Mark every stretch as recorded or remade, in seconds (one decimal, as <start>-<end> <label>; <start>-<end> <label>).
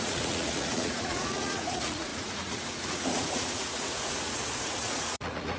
0.0-5.6 remade